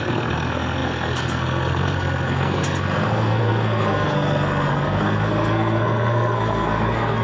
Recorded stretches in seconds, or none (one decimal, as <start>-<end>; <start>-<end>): none